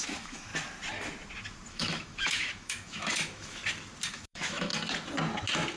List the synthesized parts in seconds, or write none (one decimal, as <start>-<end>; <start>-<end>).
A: 0.0-0.5; 1.7-3.6; 4.1-4.7